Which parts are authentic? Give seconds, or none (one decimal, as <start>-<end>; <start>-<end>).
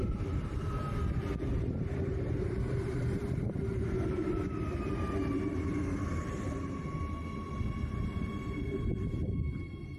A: 0.8-1.4; 6.8-7.9